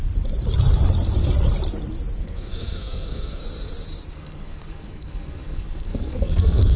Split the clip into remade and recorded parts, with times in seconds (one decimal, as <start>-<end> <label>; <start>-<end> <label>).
0.0-2.2 recorded; 2.2-3.4 remade; 3.4-4.1 recorded; 4.1-6.8 remade